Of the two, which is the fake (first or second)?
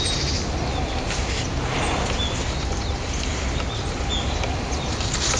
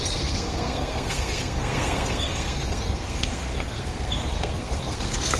second